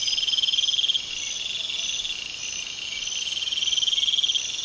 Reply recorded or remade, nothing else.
recorded